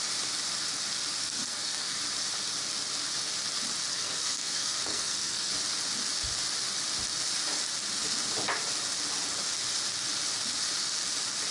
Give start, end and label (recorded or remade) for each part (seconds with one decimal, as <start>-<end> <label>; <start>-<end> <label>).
0.0-1.2 recorded; 1.2-2.0 remade; 2.0-3.9 recorded; 3.9-5.5 remade; 5.5-11.5 recorded